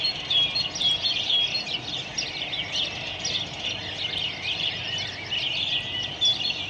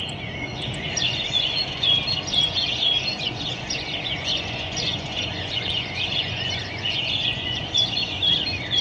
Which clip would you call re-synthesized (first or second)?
second